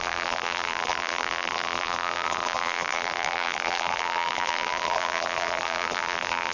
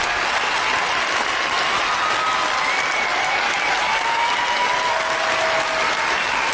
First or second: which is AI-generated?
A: first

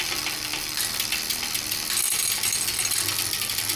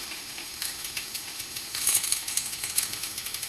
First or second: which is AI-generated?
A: second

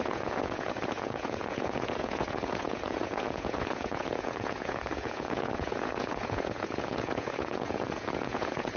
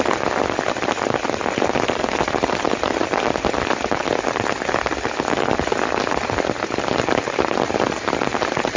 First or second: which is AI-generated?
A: first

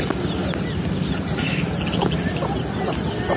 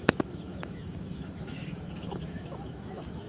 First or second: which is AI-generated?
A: second